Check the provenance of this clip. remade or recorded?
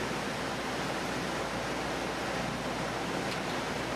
recorded